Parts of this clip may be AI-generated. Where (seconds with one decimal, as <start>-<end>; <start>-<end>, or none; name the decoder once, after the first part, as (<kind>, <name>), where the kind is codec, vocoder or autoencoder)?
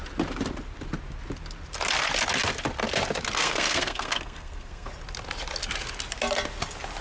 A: 3.4-4.9 (codec, SNAC)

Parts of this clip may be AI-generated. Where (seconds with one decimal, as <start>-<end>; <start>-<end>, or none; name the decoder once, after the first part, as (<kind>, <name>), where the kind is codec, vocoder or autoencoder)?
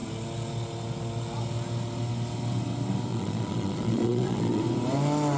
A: 3.1-4.6 (vocoder, Vocos)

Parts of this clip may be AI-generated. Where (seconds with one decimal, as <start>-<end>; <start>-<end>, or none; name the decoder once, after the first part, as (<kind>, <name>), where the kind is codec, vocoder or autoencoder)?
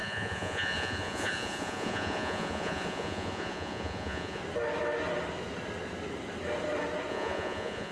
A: 0.0-4.4 (vocoder, Vocos); 7.1-7.9